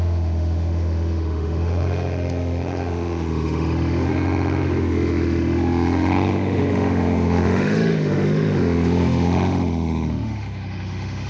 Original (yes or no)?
no